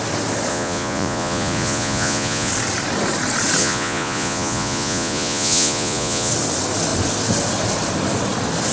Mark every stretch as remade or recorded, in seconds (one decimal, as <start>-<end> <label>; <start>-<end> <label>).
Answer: 0.0-0.5 recorded; 0.5-2.5 remade; 2.5-3.6 recorded; 3.6-6.3 remade; 6.3-8.7 recorded